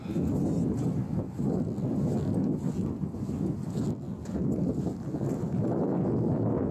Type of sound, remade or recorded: recorded